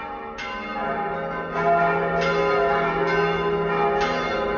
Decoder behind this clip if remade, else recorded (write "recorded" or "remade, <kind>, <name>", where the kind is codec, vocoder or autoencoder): recorded